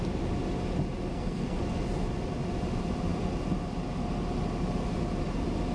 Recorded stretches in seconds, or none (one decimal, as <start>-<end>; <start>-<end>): 0.0-1.1; 1.6-5.7